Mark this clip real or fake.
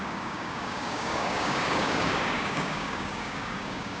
fake